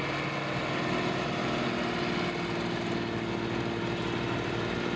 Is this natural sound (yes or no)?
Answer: yes